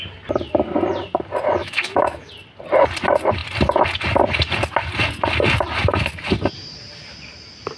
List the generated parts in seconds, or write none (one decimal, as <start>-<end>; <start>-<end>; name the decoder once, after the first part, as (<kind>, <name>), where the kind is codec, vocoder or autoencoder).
1.6-2.3 (autoencoder, DAC-VAE)